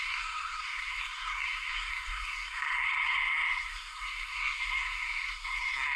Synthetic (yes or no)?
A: yes